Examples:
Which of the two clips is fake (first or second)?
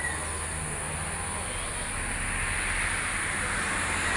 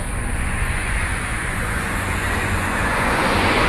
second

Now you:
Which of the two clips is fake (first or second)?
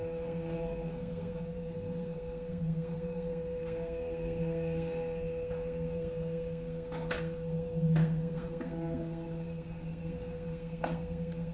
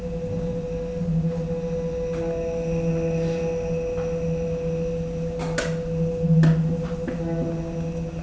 first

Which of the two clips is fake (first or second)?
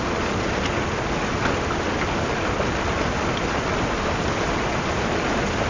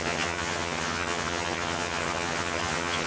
second